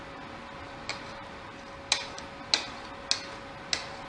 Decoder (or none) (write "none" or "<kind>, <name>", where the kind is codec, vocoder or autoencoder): none